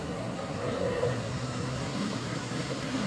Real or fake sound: fake